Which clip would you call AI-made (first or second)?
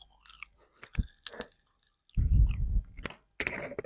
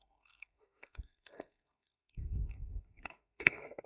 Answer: second